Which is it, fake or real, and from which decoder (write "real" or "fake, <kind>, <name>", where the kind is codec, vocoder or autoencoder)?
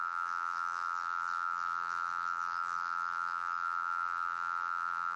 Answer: fake, vocoder, BigVGAN v2